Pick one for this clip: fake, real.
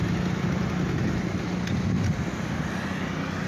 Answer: real